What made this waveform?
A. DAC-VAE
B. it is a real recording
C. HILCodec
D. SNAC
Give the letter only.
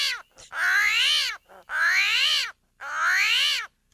B